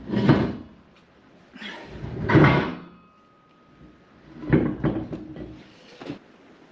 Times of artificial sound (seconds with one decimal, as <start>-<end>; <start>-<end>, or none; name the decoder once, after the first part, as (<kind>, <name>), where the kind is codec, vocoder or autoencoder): none

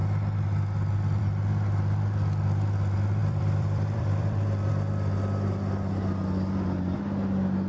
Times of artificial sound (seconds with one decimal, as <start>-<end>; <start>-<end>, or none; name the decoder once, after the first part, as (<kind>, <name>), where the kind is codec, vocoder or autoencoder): 3.2-4.7 (vocoder, BigVGAN v2)

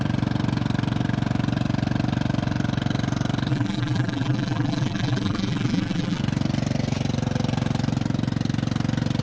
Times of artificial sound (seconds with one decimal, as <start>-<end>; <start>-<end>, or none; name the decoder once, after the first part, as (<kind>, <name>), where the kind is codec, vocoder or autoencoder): 3.5-6.2 (vocoder, BigVGAN v2)

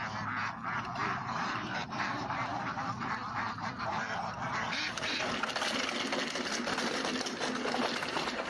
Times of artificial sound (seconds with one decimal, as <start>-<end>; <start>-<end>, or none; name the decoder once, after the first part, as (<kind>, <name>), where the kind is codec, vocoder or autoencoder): 1.0-5.3 (vocoder, BigVGAN v2)